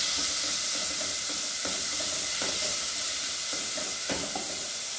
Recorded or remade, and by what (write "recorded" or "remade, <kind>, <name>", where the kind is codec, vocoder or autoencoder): recorded